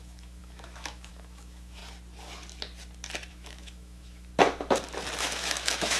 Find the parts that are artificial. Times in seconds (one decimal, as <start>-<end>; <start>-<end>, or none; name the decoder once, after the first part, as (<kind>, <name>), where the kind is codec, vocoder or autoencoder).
0.0-1.8 (autoencoder, DAC-VAE); 3.3-4.3; 5.2-6.0